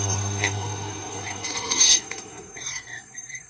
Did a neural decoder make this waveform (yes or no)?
yes